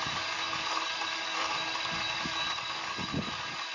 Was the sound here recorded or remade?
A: remade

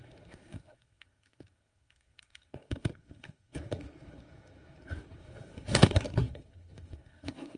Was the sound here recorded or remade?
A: remade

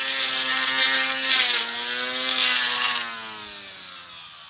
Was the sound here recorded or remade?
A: recorded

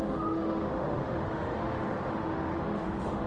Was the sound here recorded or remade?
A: remade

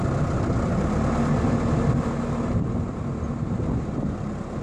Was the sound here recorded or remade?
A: recorded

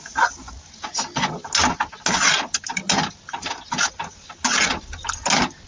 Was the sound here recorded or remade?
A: recorded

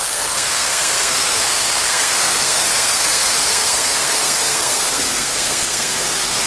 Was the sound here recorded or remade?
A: remade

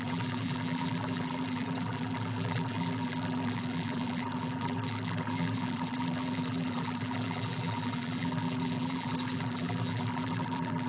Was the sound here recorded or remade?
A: remade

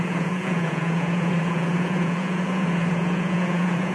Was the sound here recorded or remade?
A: remade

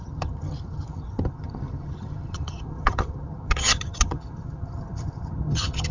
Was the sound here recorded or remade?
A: remade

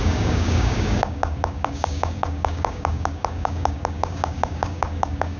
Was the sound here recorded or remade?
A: remade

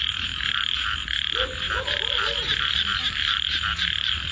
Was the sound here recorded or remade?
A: recorded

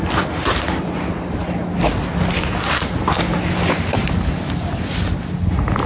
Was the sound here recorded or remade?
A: recorded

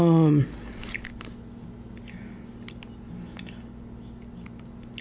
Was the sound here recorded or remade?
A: recorded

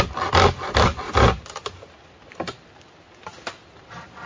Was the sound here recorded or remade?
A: recorded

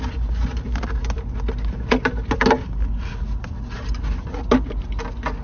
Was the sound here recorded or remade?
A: recorded